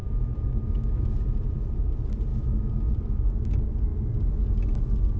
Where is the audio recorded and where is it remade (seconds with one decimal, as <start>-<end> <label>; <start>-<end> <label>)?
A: 0.0-1.1 remade; 1.1-2.3 recorded; 2.3-2.9 remade; 2.9-5.2 recorded